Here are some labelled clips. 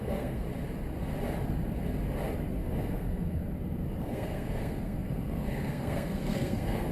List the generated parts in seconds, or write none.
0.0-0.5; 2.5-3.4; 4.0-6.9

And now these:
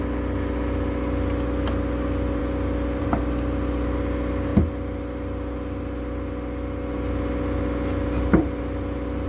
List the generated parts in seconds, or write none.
none

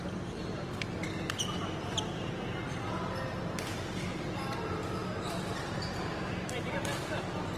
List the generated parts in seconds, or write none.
5.0-7.1

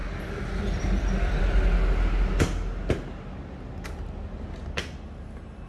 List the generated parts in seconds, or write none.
none

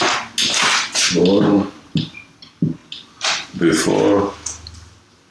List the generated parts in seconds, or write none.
none

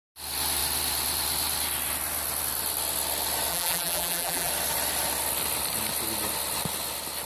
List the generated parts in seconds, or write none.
3.5-4.5